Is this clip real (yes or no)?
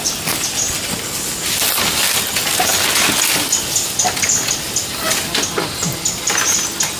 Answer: yes